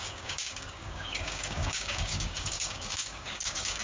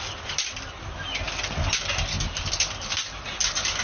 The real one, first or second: second